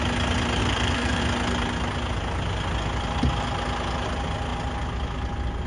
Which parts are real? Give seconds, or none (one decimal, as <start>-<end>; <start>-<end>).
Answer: 0.0-0.6; 1.2-5.7